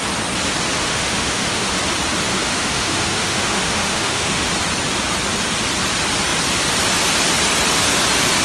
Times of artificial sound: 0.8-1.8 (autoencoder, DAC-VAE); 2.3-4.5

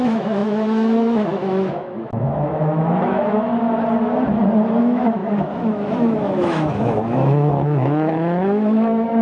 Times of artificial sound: 0.0-3.5 (autoencoder, DAC-VAE); 4.8-9.2